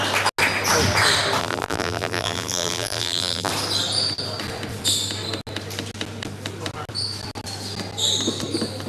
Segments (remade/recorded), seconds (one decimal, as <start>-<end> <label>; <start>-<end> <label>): 0.0-1.4 recorded; 1.4-3.5 remade; 3.5-8.9 recorded